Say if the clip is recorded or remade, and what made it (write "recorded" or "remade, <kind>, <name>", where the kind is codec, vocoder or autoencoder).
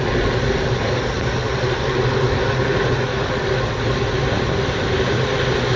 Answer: recorded